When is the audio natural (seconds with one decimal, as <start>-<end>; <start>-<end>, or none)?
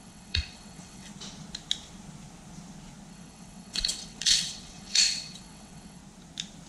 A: 1.1-3.1; 6.0-6.7